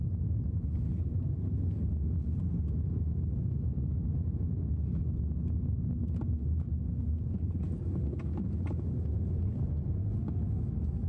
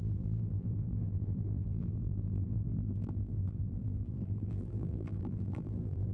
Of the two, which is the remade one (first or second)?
second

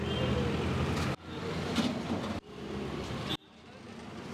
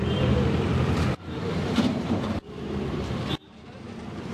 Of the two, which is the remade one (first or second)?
second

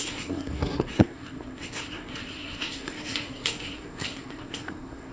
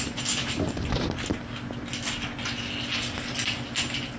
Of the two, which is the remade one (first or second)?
first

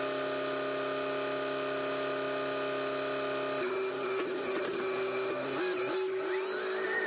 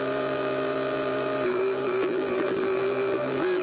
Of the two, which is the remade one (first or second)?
second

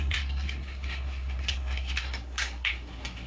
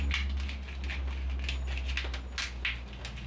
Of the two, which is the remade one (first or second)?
first